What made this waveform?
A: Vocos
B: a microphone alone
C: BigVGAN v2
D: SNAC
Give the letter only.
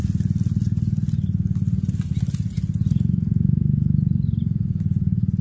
B